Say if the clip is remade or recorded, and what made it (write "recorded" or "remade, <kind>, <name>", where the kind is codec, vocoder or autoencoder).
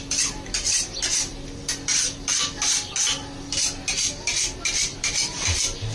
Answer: recorded